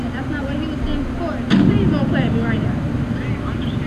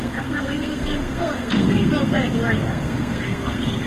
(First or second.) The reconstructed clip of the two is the second